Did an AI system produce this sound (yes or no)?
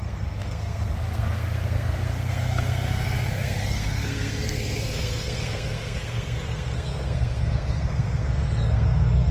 yes